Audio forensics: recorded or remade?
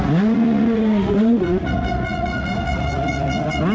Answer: remade